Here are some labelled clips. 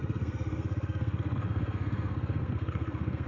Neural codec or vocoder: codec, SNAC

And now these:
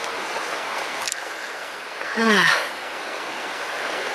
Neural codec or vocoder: codec, SNAC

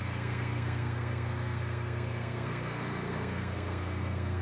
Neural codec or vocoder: codec, SNAC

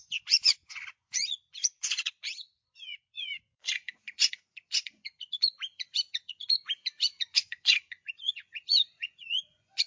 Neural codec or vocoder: vocoder, Vocos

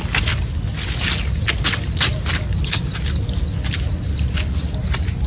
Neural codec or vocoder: none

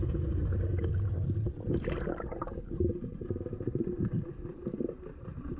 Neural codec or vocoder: none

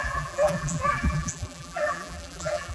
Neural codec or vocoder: vocoder, BigVGAN v2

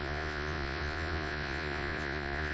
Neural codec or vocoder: vocoder, Vocos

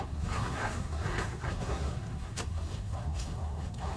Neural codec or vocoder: codec, SNAC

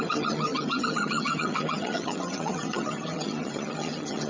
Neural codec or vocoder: vocoder, HiFi-GAN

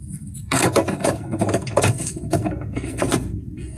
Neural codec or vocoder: codec, SNAC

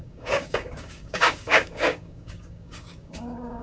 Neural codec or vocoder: codec, DAC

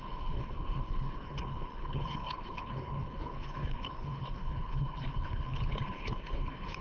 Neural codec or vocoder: codec, HILCodec